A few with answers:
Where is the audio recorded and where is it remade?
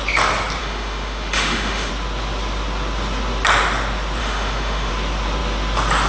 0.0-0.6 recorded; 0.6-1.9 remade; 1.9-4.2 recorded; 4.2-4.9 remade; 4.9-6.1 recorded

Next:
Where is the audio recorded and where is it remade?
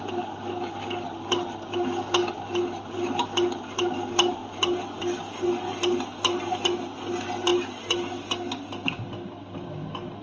0.0-10.2 recorded